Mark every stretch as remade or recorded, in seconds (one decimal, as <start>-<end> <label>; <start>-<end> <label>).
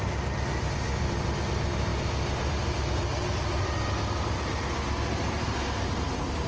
0.0-1.9 remade; 1.9-5.7 recorded; 5.7-6.5 remade